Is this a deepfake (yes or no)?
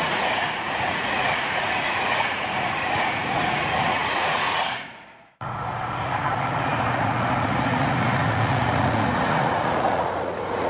yes